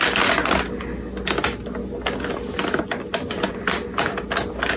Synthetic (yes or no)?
no